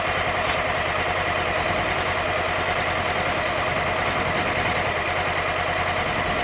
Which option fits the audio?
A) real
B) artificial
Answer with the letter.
A